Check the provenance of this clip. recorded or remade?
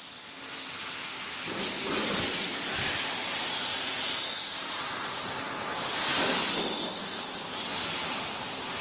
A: recorded